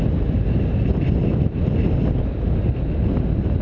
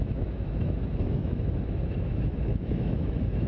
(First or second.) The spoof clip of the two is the second